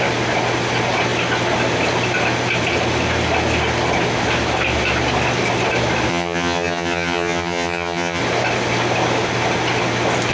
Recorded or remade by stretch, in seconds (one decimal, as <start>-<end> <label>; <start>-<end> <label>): 0.0-6.1 recorded; 6.1-8.2 remade; 8.2-10.3 recorded